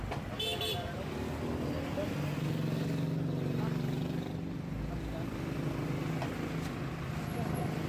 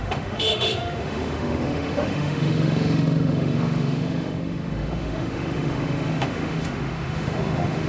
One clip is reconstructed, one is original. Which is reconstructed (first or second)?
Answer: second